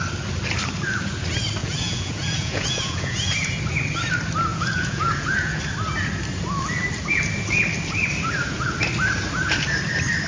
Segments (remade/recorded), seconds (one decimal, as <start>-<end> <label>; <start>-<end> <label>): 0.0-1.6 recorded; 1.6-3.5 remade; 3.5-4.5 recorded; 4.5-5.6 remade; 5.6-10.3 recorded